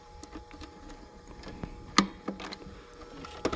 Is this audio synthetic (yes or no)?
no